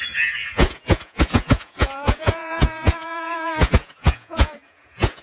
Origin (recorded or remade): remade